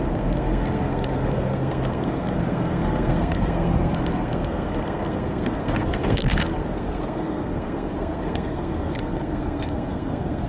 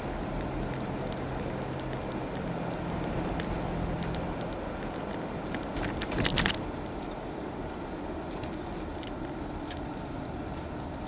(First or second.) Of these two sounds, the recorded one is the second